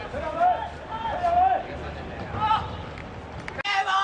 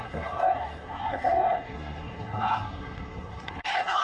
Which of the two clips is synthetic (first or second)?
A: second